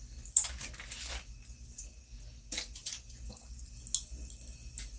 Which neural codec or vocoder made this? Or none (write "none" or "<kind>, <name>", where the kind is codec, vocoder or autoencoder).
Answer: none